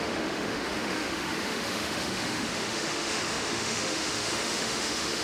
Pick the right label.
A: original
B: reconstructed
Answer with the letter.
B